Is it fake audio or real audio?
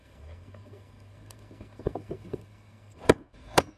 fake